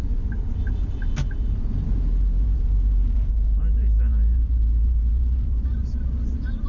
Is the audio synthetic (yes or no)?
yes